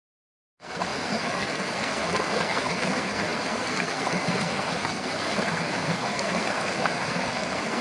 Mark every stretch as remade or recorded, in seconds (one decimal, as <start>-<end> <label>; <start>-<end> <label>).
0.0-7.8 remade